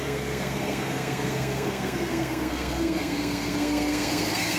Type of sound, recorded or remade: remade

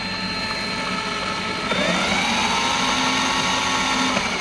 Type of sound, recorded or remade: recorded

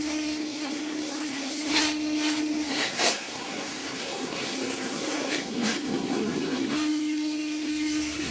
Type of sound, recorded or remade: remade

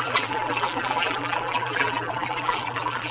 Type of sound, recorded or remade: remade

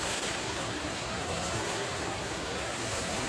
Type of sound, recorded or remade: remade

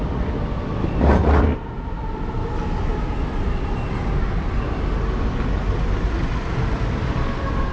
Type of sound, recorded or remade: recorded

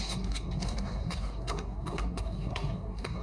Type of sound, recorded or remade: remade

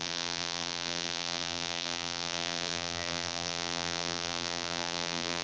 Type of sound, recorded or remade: remade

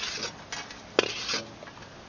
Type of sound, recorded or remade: recorded